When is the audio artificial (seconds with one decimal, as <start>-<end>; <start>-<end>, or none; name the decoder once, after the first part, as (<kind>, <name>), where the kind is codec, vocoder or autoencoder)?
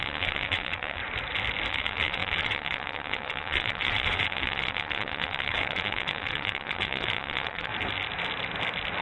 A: 0.0-1.0 (vocoder, WaveNeXt); 1.7-7.7